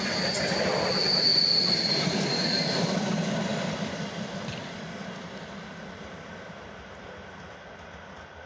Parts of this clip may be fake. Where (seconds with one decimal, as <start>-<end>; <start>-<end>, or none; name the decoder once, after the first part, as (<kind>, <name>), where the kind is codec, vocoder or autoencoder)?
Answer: none